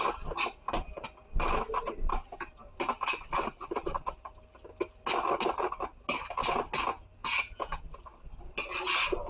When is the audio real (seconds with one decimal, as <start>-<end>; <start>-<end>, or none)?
0.0-7.2; 7.8-9.3